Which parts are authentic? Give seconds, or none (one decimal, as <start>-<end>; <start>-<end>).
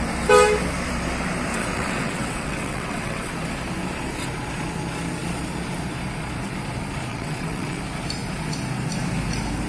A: 0.0-1.5; 3.3-7.1; 7.8-9.7